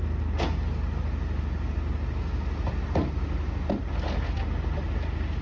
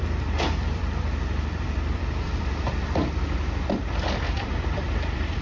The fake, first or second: second